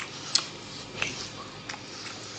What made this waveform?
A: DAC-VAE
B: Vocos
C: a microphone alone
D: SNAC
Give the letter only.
C